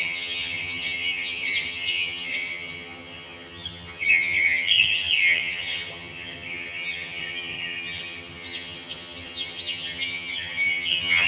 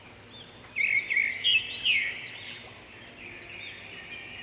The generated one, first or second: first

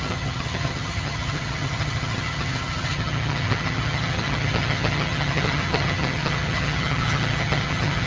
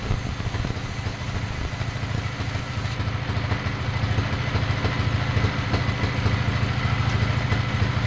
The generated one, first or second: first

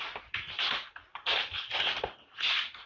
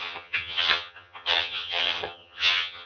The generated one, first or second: second